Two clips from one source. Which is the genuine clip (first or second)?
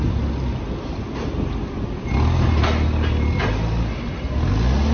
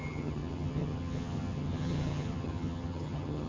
first